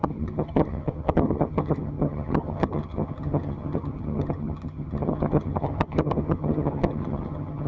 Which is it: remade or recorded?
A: remade